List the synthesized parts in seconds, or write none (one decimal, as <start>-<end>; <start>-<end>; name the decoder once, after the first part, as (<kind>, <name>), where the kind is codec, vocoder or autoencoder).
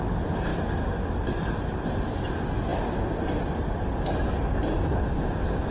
none